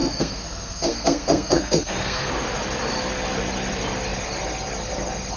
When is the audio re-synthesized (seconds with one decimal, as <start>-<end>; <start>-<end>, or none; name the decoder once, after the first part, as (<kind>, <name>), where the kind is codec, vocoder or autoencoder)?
0.0-2.3 (codec, SNAC)